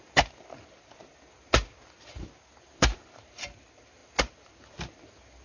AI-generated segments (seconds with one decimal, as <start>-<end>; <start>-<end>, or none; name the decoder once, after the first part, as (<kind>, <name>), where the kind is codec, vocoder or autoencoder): none

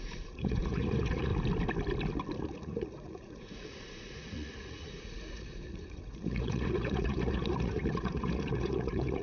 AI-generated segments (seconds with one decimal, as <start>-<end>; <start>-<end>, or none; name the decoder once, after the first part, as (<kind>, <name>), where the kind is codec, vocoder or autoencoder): 0.0-1.3 (vocoder, Vocos); 2.4-9.2

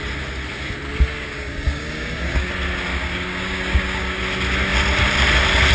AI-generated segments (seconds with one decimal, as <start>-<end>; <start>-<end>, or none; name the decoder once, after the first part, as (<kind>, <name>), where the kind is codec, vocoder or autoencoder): 1.1-2.5 (codec, DAC); 2.9-4.2

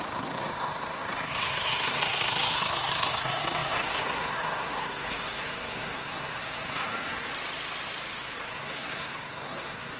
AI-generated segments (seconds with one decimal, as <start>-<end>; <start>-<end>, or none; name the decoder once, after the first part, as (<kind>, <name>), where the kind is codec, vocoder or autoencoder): 0.0-7.3 (codec, SNAC); 8.3-10.0

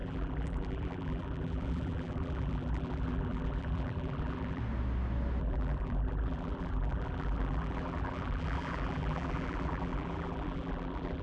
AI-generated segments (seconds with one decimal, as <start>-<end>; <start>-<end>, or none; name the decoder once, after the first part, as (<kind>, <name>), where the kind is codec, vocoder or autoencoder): 0.0-4.6 (vocoder, BigVGAN v2); 5.4-11.2

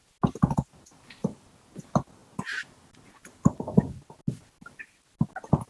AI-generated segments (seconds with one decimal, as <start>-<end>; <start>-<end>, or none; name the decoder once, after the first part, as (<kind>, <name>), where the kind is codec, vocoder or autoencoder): none

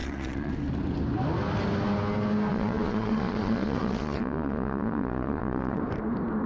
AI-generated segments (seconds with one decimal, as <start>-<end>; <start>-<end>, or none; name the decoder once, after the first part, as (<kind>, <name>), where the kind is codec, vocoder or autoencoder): 0.0-0.5 (vocoder, Vocos); 2.5-5.8

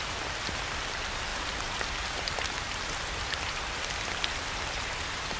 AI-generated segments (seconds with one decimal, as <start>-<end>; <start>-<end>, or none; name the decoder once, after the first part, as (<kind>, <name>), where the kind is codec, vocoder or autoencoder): none